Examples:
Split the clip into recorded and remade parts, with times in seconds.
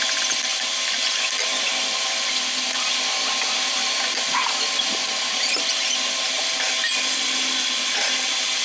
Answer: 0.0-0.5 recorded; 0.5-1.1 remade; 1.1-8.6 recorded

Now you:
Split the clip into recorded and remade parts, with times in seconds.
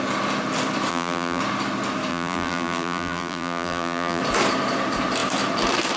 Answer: 0.0-0.9 recorded; 0.9-1.4 remade; 1.4-2.1 recorded; 2.1-4.2 remade; 4.2-6.0 recorded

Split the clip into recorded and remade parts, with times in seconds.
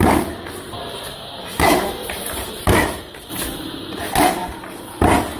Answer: 0.0-2.0 recorded; 2.0-3.3 remade; 3.3-5.4 recorded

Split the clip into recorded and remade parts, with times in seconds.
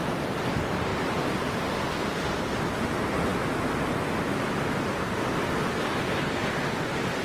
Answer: 0.0-0.9 recorded; 0.9-1.5 remade; 1.5-7.2 recorded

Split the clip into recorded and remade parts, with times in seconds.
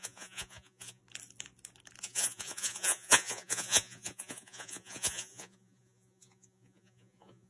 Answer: 0.0-1.0 remade; 1.0-2.0 recorded; 2.0-7.5 remade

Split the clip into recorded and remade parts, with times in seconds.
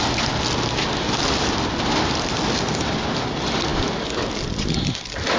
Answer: 0.0-5.4 recorded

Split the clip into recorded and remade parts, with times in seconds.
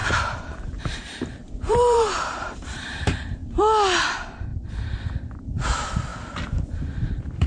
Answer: 0.0-3.4 remade; 3.4-4.1 recorded; 4.1-4.5 remade; 4.5-5.1 recorded; 5.1-7.5 remade